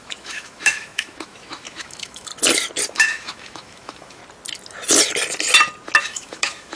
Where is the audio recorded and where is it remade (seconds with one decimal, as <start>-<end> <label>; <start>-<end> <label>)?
0.0-2.3 remade; 2.3-2.9 recorded; 2.9-4.2 remade; 4.2-6.0 recorded; 6.0-6.8 remade